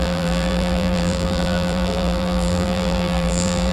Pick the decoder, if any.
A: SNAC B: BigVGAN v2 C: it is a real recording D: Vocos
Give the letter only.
B